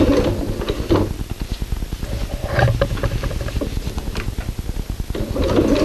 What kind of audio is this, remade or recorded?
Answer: recorded